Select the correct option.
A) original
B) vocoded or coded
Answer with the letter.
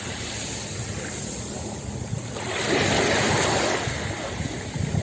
A